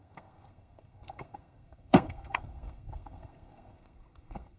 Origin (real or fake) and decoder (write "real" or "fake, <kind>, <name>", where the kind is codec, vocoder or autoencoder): fake, codec, SNAC